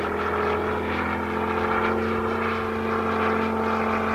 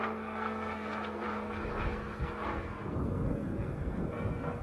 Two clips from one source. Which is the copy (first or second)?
second